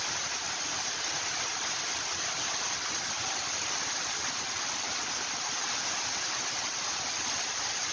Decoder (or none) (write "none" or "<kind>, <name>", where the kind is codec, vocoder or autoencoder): none